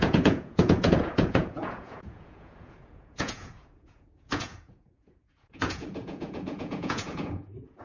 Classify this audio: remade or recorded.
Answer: remade